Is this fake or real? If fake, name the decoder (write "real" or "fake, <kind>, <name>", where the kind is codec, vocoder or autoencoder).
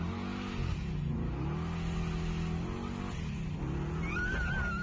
real